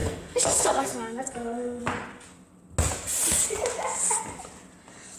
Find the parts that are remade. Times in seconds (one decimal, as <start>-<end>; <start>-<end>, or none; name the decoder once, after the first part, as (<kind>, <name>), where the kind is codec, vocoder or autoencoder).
0.0-1.8 (codec, SNAC)